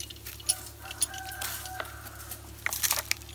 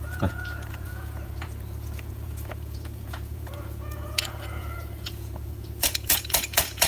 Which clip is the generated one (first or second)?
second